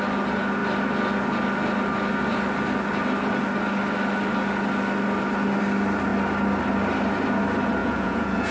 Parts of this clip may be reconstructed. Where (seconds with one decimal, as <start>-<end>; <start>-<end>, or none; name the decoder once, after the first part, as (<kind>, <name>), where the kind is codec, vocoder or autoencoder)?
7.8-8.5 (vocoder, Vocos)